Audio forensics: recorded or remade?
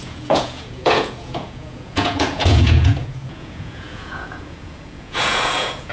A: remade